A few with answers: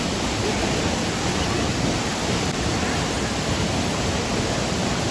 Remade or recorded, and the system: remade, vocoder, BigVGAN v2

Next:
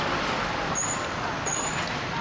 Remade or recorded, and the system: recorded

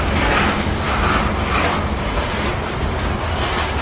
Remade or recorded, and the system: recorded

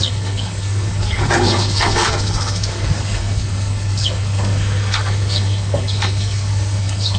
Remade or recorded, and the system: remade, codec, SNAC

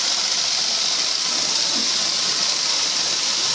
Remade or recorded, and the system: recorded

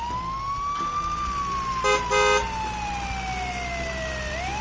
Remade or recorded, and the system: recorded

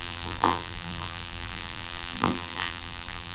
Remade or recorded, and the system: remade, vocoder, BigVGAN v2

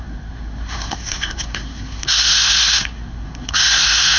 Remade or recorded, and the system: remade, codec, SNAC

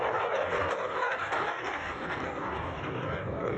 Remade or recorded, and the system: remade, codec, DAC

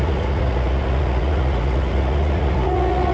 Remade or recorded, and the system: remade, vocoder, Vocos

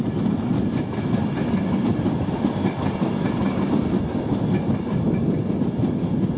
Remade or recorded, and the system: recorded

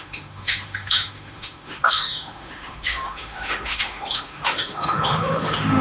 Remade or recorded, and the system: remade, autoencoder, DAC-VAE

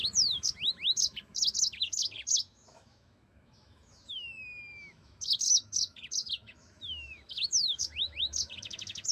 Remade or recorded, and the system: remade, autoencoder, DAC-VAE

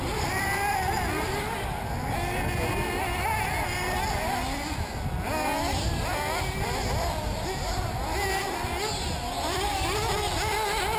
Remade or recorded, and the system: recorded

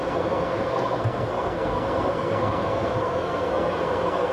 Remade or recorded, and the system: remade, codec, SNAC